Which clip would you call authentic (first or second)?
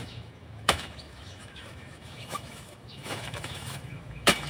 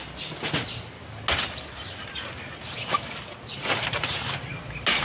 second